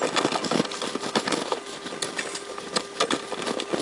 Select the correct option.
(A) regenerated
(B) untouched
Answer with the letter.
B